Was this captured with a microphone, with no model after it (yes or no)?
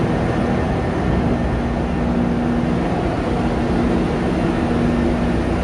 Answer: yes